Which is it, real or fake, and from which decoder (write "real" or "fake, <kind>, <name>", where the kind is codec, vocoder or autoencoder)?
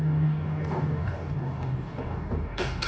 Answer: fake, codec, DAC